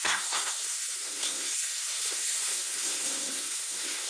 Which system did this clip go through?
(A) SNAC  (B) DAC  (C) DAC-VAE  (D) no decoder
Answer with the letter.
A